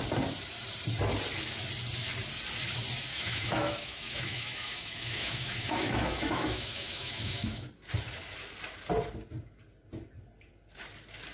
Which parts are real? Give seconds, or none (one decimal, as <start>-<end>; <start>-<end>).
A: 0.0-3.1; 7.7-11.3